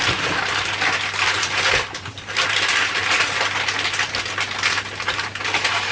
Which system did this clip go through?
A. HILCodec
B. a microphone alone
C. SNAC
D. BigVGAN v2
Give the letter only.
B